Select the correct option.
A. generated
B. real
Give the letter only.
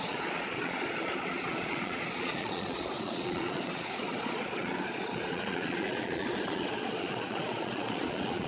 A